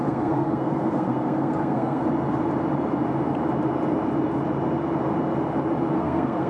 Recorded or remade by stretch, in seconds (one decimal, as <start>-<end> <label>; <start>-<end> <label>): 0.0-2.0 remade; 2.0-5.9 recorded; 5.9-6.5 remade